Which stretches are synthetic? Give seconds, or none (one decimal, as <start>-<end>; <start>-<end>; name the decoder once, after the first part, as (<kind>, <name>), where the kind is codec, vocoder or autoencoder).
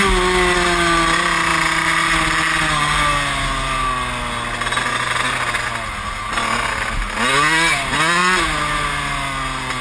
none